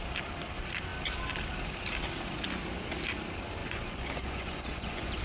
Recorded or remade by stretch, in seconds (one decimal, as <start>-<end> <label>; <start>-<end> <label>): 0.0-3.6 recorded; 3.6-5.2 remade